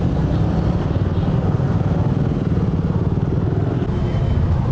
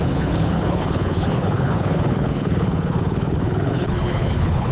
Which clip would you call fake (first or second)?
second